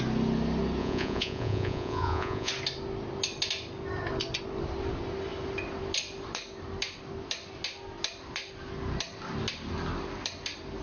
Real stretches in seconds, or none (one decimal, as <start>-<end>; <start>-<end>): 0.0-0.8; 2.5-10.8